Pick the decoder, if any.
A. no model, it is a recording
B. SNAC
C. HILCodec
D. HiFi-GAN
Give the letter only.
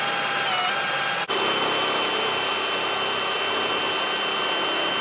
A